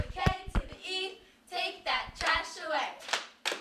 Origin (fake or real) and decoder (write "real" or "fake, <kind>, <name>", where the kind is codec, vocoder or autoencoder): real